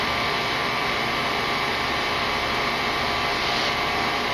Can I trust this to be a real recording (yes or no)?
no